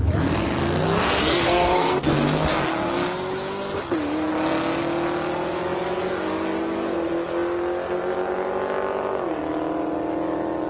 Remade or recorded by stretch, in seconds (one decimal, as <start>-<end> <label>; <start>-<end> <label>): 0.0-1.0 recorded; 1.0-2.5 remade; 2.5-10.7 recorded